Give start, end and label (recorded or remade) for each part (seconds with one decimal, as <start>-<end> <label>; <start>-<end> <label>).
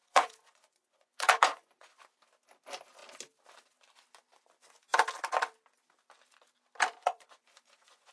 0.0-2.0 remade; 2.0-7.0 recorded; 7.0-8.1 remade